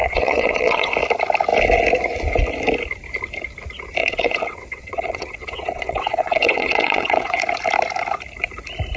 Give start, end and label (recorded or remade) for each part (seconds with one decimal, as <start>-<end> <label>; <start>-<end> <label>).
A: 0.0-0.9 remade; 0.9-4.0 recorded; 4.0-7.4 remade; 7.4-9.0 recorded